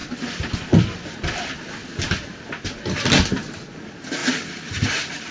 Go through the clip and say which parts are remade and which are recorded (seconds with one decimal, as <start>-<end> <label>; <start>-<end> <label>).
0.0-5.3 recorded